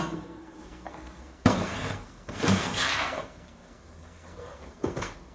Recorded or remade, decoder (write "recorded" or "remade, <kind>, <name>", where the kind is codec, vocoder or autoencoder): remade, codec, SNAC